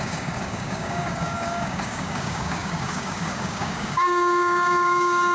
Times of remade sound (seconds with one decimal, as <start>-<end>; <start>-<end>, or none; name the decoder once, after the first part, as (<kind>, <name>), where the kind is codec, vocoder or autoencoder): 0.0-5.3 (codec, DAC)